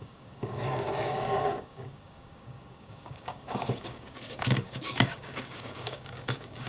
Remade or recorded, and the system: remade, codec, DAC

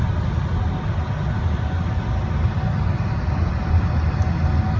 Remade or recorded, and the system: recorded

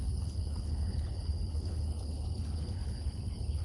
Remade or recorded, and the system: remade, codec, HILCodec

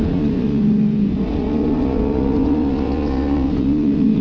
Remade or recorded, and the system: remade, vocoder, Vocos